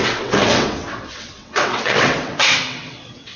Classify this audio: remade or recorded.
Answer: remade